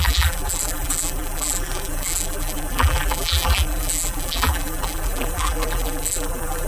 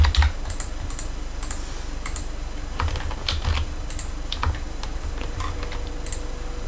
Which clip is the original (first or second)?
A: second